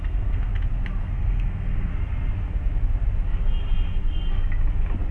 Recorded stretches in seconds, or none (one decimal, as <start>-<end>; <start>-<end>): 0.5-1.0; 1.9-5.1